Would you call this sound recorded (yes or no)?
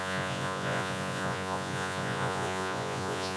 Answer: no